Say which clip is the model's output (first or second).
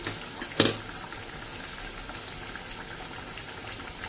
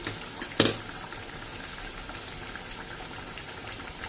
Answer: second